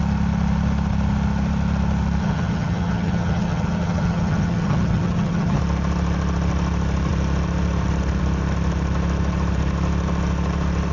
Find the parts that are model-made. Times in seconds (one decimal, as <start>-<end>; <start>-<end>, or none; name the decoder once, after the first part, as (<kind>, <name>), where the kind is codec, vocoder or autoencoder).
2.2-5.6 (vocoder, HiFi-GAN)